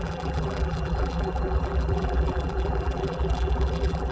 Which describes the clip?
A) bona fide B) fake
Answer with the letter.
B